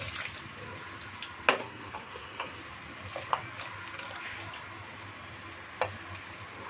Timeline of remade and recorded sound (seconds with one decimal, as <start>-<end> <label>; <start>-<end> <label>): 0.0-1.6 recorded; 1.6-2.6 remade; 2.6-6.7 recorded